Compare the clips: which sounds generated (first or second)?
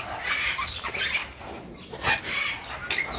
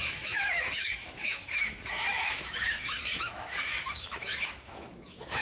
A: second